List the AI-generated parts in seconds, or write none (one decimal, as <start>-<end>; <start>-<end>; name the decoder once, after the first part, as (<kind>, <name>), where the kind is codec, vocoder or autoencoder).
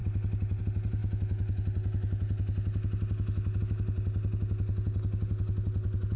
none